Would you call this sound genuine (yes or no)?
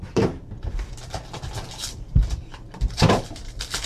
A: no